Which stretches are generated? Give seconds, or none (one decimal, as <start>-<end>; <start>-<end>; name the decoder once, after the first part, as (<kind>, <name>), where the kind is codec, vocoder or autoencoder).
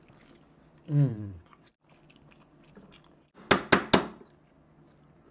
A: 1.1-1.7 (vocoder, WaveNeXt)